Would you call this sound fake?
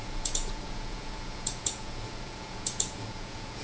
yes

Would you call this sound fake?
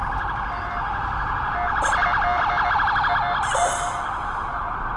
no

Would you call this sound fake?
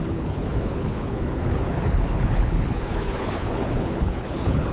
yes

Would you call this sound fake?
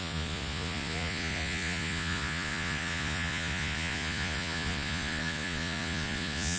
yes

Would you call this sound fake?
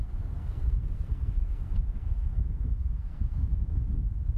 yes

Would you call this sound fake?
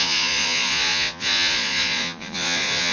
yes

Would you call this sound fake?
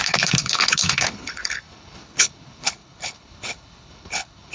yes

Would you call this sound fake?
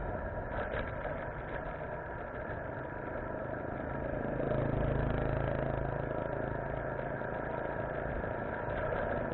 no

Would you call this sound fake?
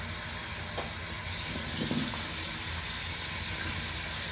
no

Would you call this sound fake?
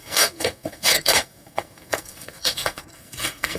yes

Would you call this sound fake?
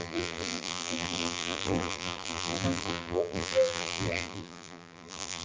yes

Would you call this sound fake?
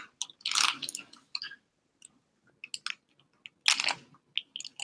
no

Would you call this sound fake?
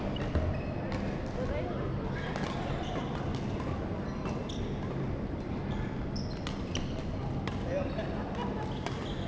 no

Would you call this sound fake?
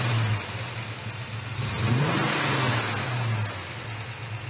no